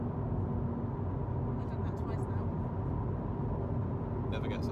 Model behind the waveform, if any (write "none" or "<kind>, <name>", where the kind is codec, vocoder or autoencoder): none